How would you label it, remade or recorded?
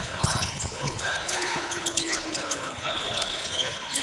remade